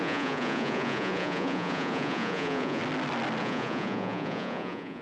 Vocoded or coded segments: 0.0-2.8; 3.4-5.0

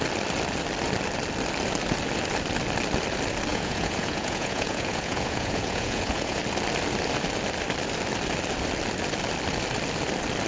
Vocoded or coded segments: 3.5-6.4

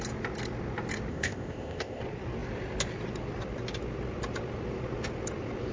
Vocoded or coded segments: 1.1-2.0

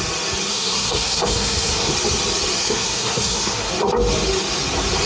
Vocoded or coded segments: 0.5-1.9; 2.6-3.7